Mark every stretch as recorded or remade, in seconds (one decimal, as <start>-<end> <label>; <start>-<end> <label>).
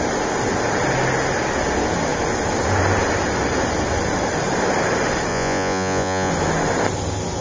0.0-5.3 recorded; 5.3-6.3 remade; 6.3-7.4 recorded